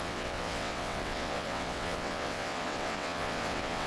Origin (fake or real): fake